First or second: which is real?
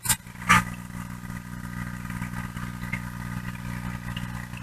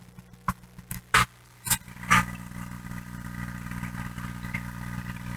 first